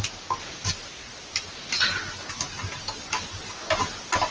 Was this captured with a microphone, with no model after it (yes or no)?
yes